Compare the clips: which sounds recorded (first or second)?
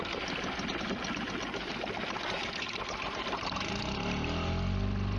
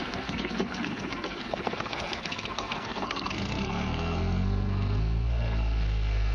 first